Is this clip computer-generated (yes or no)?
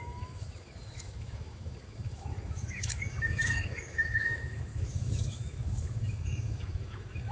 yes